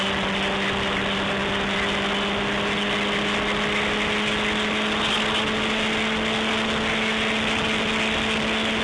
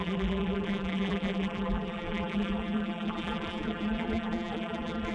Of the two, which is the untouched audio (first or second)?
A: first